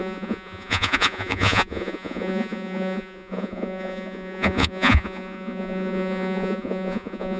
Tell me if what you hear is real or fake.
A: fake